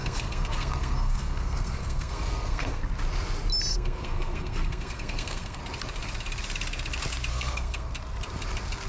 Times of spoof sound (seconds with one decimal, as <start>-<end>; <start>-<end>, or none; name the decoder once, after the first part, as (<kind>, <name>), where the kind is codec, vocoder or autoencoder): 0.0-2.8 (codec, SNAC); 3.7-5.6; 7.3-7.9